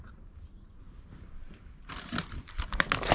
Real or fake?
real